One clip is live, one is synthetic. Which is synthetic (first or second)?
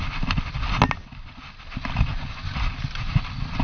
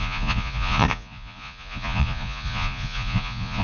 second